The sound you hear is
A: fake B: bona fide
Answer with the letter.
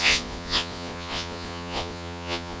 A